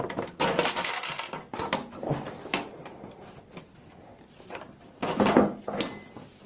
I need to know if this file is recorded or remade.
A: recorded